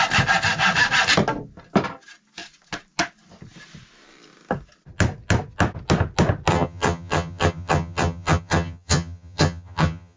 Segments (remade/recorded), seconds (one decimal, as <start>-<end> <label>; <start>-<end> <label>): 0.0-6.5 recorded; 6.5-10.2 remade